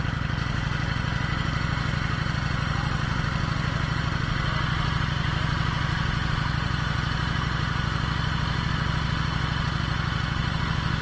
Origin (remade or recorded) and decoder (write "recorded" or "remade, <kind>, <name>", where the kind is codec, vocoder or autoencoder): recorded